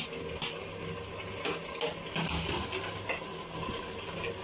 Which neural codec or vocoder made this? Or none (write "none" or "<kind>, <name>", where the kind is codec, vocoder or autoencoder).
none